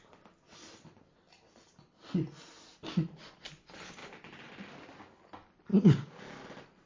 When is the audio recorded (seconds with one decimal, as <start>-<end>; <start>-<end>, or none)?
0.0-5.7; 6.2-6.9